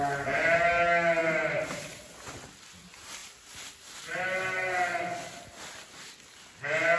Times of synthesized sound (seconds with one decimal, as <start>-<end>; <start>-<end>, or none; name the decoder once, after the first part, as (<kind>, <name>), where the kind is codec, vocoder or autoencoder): none